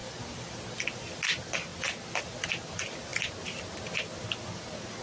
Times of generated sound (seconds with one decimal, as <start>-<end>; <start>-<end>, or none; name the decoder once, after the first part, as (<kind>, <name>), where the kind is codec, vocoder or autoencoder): none